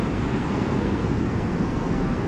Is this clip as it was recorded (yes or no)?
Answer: no